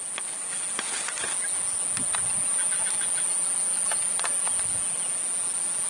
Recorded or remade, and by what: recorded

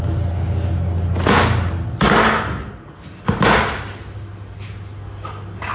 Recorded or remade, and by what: recorded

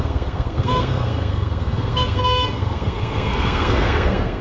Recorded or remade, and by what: remade, codec, SNAC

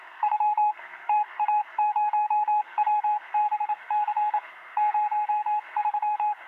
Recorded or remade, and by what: remade, codec, SNAC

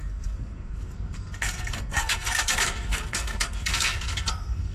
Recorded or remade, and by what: remade, codec, SNAC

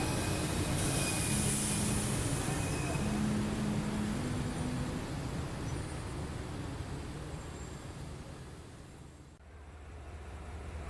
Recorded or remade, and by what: recorded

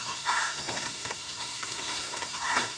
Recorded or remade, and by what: remade, codec, SNAC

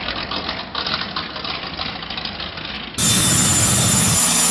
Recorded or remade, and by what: recorded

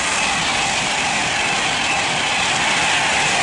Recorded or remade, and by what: recorded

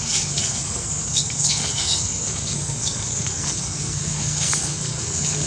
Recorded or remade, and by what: remade, codec, SNAC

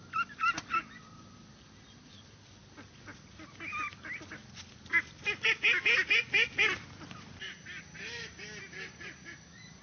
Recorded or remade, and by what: recorded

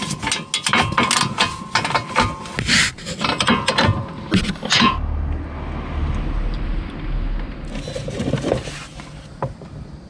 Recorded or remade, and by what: recorded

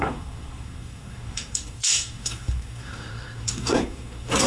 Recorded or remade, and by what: remade, codec, SNAC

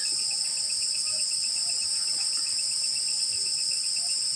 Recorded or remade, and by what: recorded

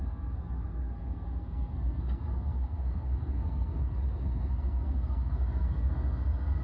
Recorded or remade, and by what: remade, codec, SNAC